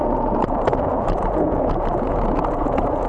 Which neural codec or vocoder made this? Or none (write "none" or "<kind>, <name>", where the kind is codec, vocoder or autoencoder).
vocoder, Vocos